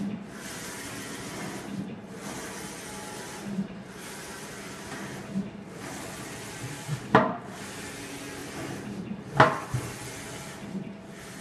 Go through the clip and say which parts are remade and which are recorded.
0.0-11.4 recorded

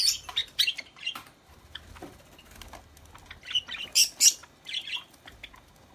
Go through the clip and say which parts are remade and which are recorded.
0.0-0.4 recorded; 0.4-1.8 remade; 1.8-4.4 recorded; 4.4-5.9 remade

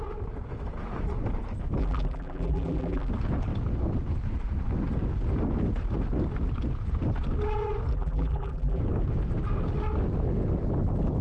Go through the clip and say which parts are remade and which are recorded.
0.0-1.8 recorded; 1.8-3.1 remade; 3.1-7.9 recorded; 7.9-8.8 remade; 8.8-11.2 recorded

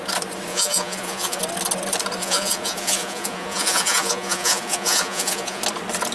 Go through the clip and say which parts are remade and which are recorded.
0.0-0.5 recorded; 0.5-1.4 remade; 1.4-2.2 recorded; 2.2-5.6 remade; 5.6-6.1 recorded

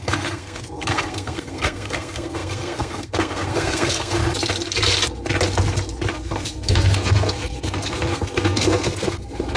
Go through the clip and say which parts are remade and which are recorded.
0.0-4.2 remade; 4.2-6.1 recorded; 6.1-9.6 remade

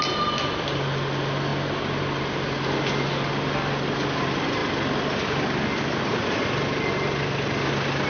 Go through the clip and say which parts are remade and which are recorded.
0.0-8.1 recorded

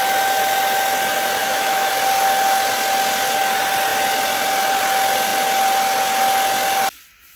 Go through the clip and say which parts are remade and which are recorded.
0.0-1.4 recorded; 1.4-1.9 remade; 1.9-7.4 recorded